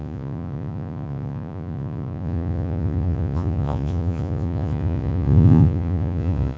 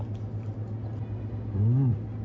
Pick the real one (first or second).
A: second